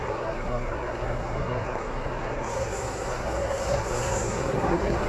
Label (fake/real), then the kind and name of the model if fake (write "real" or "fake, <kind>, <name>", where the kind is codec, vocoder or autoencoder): fake, codec, SNAC